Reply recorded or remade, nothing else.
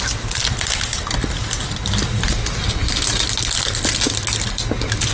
recorded